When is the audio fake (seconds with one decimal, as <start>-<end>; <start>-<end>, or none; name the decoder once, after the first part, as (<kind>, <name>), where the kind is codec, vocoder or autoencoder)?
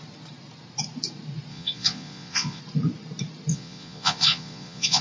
1.5-2.6 (vocoder, Vocos); 3.5-5.0